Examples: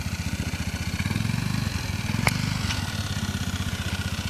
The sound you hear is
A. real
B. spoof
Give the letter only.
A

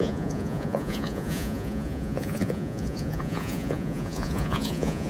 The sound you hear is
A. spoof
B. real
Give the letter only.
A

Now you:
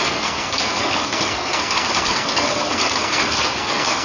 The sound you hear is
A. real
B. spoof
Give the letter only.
B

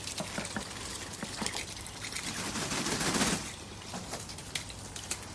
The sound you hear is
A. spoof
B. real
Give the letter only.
B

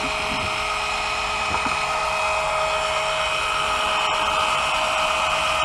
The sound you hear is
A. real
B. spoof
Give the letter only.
A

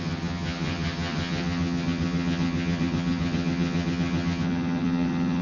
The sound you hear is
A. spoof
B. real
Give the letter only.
A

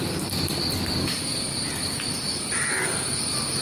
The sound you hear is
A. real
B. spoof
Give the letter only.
A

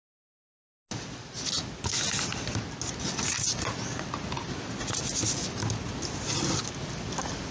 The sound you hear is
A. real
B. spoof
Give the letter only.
A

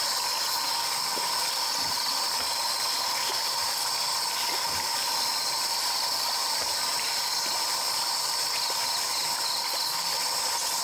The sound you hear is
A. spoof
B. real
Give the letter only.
B